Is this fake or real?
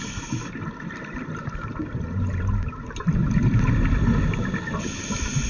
real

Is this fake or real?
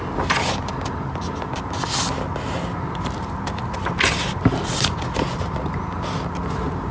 real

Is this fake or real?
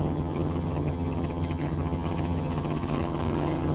fake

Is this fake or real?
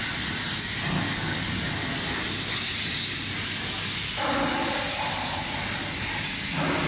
real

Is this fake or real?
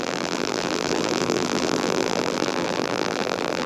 fake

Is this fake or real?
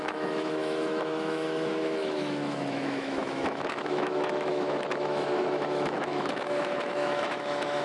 fake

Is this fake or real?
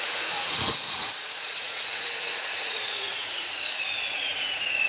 fake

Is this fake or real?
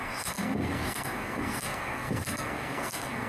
fake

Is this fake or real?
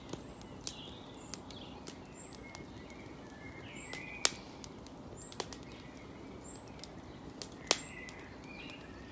real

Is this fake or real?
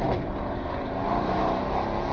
real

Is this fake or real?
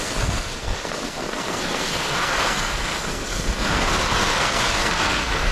fake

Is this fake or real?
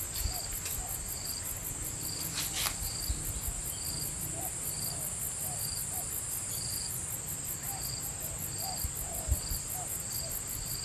real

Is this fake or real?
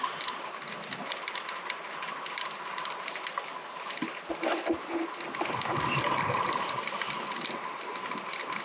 real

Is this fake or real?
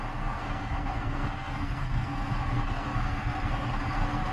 fake